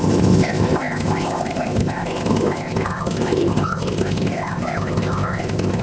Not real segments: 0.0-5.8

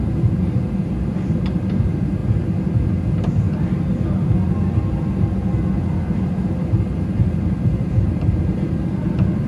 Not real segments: 0.0-2.2; 6.2-9.5

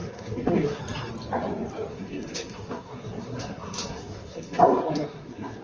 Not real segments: 0.0-0.8; 1.9-5.6

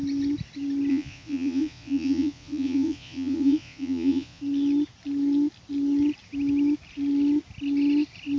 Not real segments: 0.9-4.4

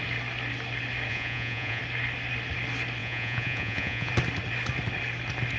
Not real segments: 1.1-1.8; 3.0-4.1

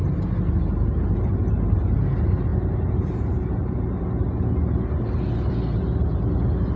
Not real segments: none

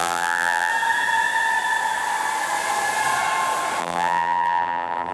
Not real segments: 0.0-0.7; 3.8-5.1

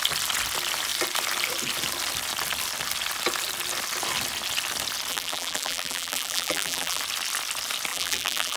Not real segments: 5.1-7.0; 7.9-8.6